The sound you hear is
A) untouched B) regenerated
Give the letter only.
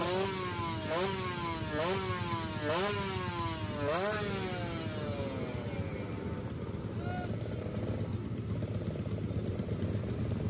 A